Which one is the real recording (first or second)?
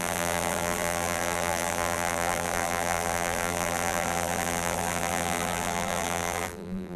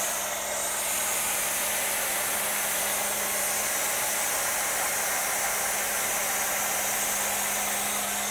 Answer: second